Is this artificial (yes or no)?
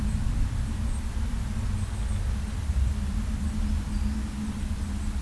no